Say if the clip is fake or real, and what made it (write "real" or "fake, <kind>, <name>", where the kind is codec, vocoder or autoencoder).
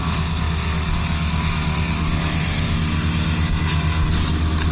real